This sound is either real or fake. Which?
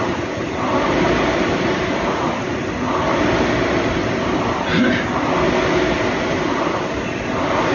real